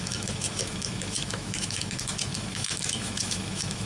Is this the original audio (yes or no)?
no